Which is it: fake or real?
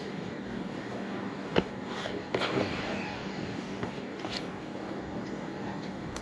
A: fake